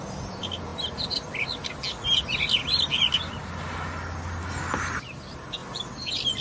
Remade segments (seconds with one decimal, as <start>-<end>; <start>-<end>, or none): none